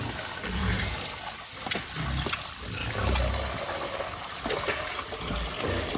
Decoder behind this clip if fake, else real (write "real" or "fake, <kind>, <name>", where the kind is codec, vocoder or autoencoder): real